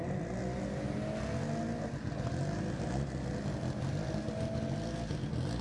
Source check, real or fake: real